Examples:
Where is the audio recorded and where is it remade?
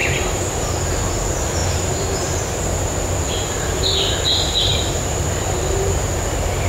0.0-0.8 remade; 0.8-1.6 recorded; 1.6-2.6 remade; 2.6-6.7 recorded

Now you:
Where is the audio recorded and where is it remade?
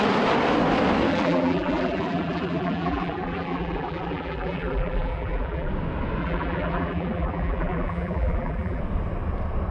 0.0-1.1 recorded; 1.1-5.7 remade; 5.7-6.2 recorded; 6.2-8.8 remade; 8.8-9.7 recorded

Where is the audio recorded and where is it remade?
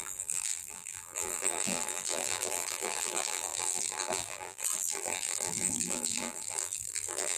0.0-7.4 remade